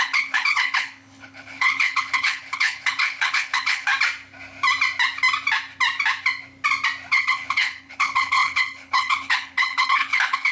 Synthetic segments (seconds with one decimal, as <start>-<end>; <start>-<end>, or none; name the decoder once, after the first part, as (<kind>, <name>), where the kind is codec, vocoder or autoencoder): 0.0-3.9 (codec, HILCodec); 7.1-10.5